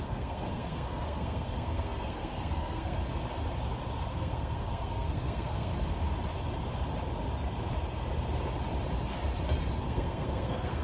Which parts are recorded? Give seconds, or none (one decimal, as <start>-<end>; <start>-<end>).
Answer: 3.0-4.1; 5.7-9.8